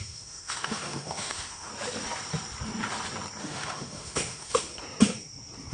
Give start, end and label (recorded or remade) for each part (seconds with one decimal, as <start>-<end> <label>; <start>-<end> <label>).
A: 0.0-1.7 remade; 1.7-3.4 recorded; 3.4-4.7 remade; 4.7-5.7 recorded